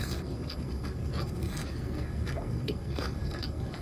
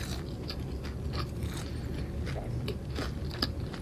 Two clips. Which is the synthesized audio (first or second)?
first